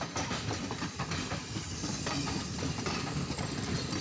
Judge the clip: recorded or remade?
remade